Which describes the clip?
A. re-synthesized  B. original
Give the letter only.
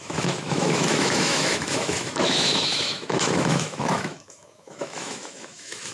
A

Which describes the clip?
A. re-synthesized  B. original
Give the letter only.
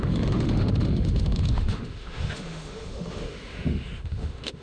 A